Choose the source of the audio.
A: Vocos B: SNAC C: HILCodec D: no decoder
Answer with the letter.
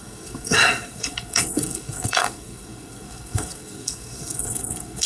B